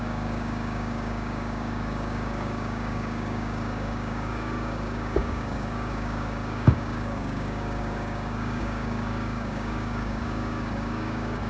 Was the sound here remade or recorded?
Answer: remade